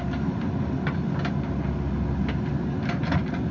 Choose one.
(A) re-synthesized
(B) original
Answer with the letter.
B